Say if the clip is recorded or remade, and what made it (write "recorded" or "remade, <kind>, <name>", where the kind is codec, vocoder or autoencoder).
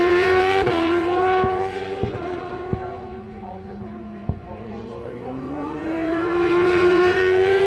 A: remade, vocoder, Vocos